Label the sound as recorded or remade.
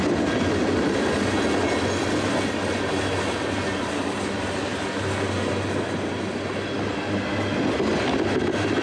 recorded